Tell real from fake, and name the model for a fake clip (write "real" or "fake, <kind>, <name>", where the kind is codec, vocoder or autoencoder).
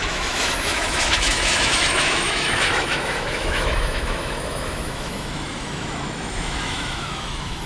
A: fake, autoencoder, DAC-VAE